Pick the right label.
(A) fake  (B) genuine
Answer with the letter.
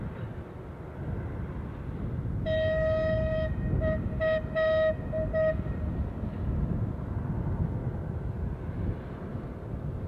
B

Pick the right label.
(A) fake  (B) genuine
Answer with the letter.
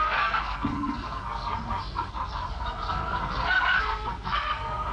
A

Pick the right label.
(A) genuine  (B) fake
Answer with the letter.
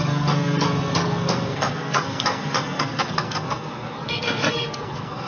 B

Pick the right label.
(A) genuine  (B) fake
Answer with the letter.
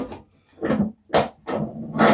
A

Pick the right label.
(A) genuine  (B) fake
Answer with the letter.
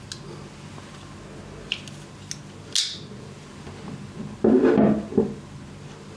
A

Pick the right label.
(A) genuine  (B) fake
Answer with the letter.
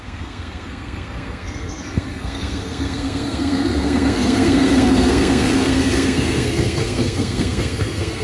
B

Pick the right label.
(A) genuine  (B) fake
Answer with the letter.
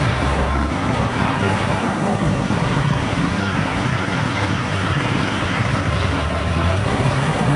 B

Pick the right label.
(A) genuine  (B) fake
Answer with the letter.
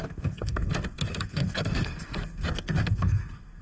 B